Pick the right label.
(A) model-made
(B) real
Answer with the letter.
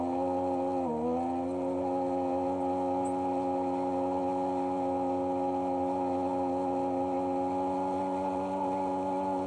B